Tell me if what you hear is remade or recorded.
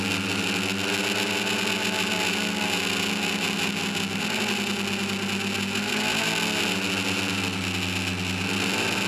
recorded